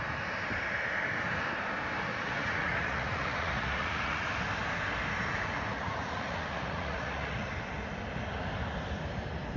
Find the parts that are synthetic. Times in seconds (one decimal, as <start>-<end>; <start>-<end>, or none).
2.1-4.3; 5.7-7.5